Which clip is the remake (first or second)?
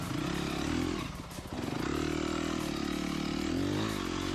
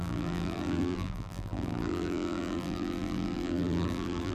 second